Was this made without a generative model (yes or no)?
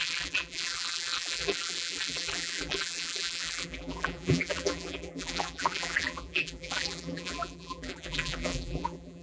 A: no